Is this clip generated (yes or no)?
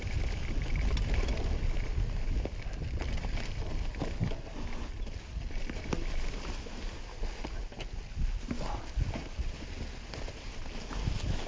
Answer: no